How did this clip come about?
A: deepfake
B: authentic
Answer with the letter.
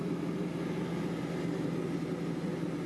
B